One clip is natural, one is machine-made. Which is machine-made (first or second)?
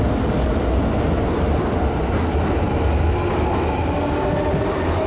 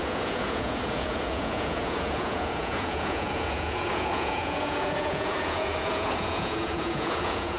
second